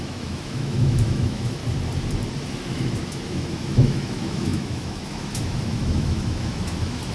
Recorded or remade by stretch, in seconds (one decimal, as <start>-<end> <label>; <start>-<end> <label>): 0.0-1.6 remade; 1.6-2.5 recorded; 2.5-7.1 remade